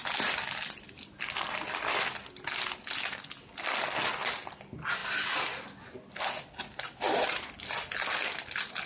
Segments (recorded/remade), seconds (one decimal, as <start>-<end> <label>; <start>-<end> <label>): 0.0-8.9 recorded